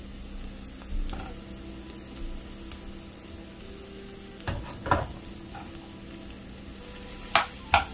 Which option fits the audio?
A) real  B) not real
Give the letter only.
A